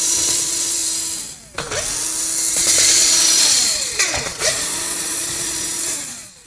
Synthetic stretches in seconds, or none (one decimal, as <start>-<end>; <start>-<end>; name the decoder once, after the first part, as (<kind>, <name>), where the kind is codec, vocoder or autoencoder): 0.0-0.8 (vocoder, Vocos); 2.5-6.5